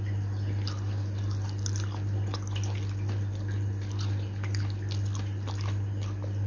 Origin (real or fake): real